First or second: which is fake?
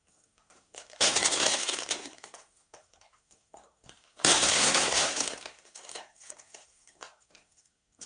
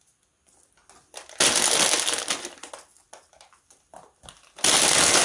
first